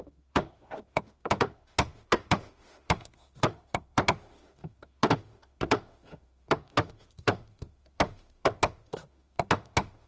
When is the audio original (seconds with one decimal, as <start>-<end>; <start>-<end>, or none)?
none